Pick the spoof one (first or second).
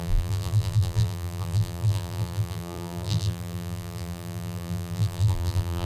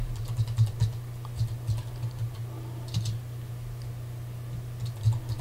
first